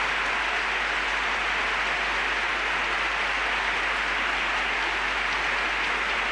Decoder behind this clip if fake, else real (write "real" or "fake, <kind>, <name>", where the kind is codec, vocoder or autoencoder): real